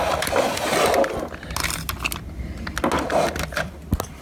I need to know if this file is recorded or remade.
recorded